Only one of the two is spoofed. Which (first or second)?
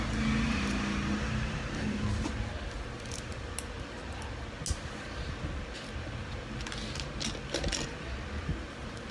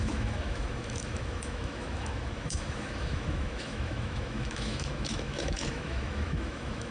second